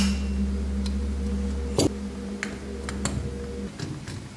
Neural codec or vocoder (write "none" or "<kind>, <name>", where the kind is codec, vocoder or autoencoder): none